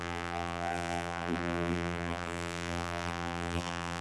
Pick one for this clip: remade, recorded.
remade